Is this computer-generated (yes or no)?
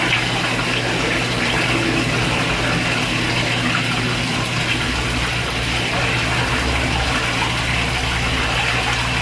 no